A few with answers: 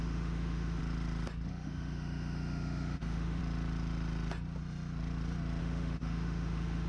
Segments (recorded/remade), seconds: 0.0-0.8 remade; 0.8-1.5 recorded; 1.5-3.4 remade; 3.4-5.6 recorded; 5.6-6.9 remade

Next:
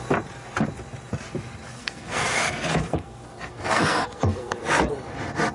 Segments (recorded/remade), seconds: 0.0-1.8 recorded; 1.8-4.9 remade; 4.9-5.5 recorded

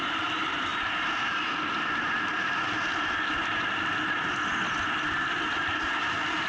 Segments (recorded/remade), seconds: 0.0-6.5 recorded

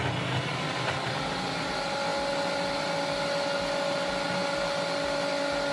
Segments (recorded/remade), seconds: 0.0-5.7 recorded